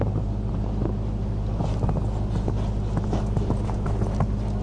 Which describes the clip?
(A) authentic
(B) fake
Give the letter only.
A